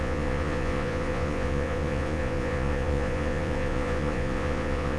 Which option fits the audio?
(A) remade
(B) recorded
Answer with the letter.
A